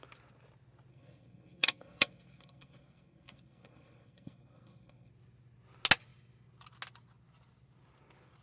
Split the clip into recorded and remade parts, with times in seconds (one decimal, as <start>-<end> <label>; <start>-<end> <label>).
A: 0.0-0.9 recorded; 0.9-5.1 remade; 5.1-8.4 recorded